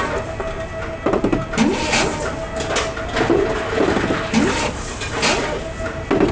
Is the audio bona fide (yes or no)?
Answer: yes